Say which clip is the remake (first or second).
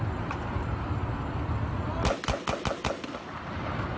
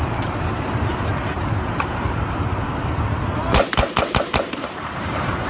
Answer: second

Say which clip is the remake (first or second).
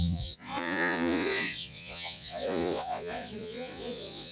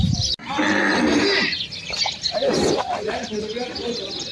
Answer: first